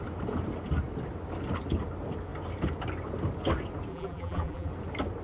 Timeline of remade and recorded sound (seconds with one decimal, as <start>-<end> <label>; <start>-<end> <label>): 0.0-3.9 recorded; 3.9-4.7 remade; 4.7-5.2 recorded